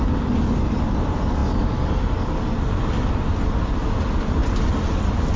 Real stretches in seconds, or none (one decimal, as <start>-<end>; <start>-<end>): 0.0-5.4

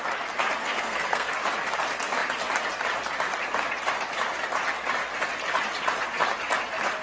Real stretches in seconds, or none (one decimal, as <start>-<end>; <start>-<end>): 0.0-0.6; 1.3-7.0

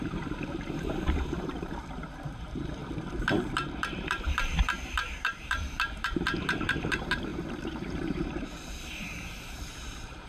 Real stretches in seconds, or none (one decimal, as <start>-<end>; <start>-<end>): none

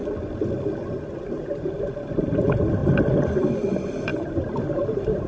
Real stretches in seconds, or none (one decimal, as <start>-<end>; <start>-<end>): 0.0-4.1

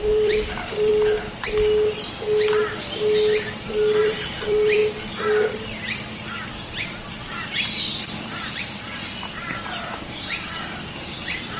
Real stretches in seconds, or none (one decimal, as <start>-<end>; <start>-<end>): 0.9-4.0; 4.8-7.8